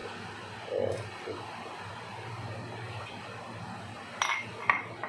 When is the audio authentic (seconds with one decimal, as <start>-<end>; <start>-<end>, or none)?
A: 0.0-5.1